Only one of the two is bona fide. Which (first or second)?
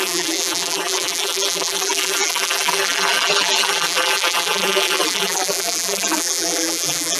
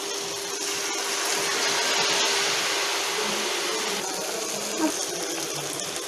second